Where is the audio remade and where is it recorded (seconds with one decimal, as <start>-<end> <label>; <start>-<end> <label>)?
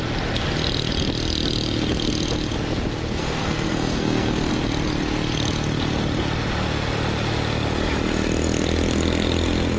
0.0-3.2 recorded; 3.2-4.5 remade; 4.5-9.8 recorded